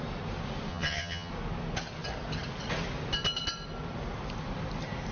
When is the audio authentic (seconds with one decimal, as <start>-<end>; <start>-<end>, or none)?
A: 0.0-0.7; 1.3-5.1